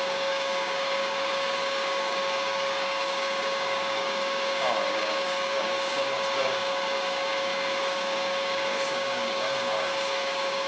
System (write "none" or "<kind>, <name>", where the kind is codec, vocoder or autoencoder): codec, DAC